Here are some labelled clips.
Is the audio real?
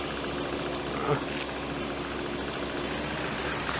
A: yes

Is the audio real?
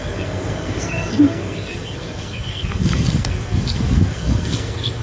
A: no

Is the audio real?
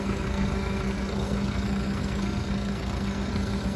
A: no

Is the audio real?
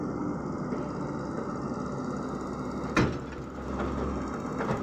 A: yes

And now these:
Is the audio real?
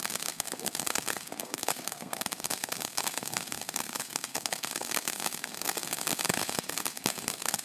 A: no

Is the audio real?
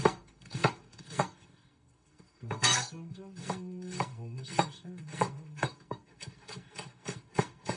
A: no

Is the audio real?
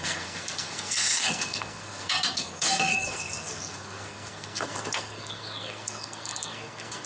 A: no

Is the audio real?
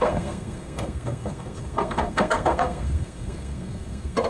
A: no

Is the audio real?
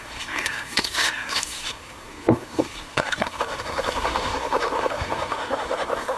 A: no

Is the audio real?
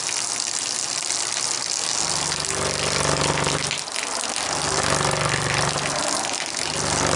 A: yes